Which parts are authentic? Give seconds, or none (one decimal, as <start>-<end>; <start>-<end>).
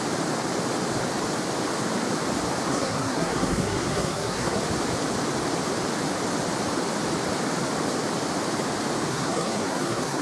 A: 0.0-2.7; 4.6-9.1